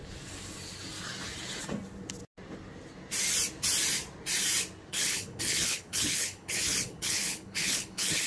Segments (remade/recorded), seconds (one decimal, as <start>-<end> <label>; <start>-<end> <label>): 0.0-4.9 recorded; 4.9-8.3 remade